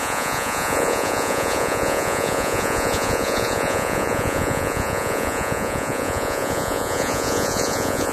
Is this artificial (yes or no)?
yes